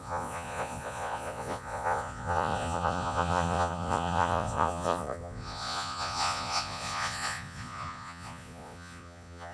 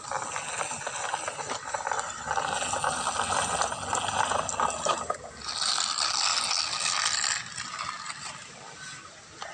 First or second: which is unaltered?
second